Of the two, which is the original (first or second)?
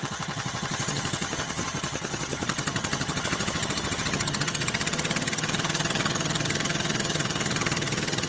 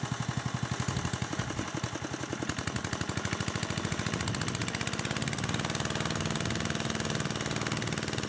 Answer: second